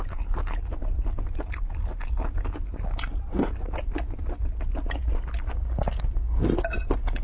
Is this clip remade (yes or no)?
no